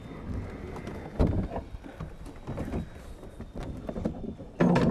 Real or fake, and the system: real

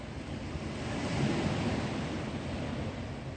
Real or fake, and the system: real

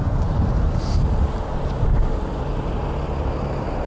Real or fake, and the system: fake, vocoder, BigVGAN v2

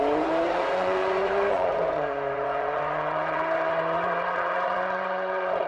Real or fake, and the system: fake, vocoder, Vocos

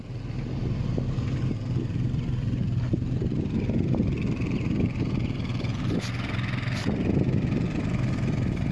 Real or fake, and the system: real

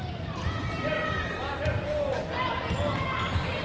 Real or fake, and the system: real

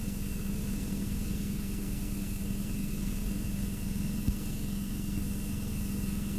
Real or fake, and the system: fake, codec, SNAC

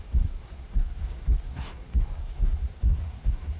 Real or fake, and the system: fake, codec, SNAC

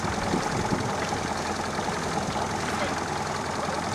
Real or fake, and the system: real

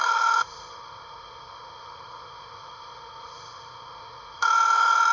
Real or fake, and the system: fake, autoencoder, DAC-VAE